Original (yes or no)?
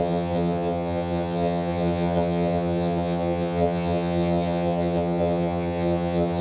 no